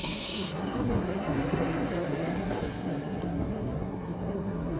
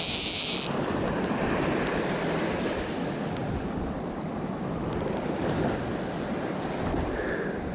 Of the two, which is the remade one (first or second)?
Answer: first